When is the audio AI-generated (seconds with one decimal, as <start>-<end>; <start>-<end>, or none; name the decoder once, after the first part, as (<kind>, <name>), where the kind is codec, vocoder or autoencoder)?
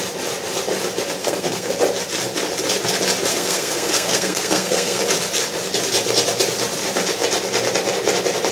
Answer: 1.2-1.7 (codec, SNAC); 3.3-5.0